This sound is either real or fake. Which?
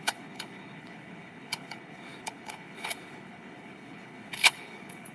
fake